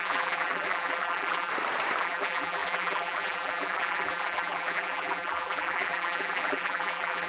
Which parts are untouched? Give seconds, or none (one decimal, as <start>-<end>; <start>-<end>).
1.5-2.0